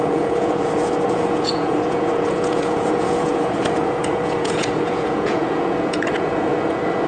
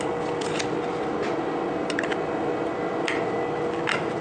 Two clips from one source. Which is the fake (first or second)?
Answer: first